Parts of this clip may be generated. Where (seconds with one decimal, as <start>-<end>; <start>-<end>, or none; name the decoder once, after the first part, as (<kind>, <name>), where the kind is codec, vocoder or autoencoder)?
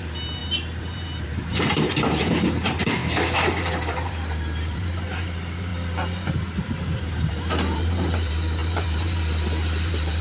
0.0-3.0 (vocoder, BigVGAN v2); 3.7-5.7; 6.6-10.2